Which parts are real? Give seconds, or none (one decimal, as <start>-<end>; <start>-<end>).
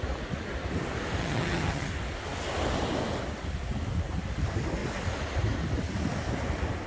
0.0-1.2; 1.9-6.9